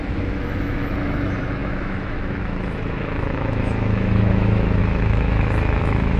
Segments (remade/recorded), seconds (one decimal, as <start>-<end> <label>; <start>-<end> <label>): 0.0-6.2 remade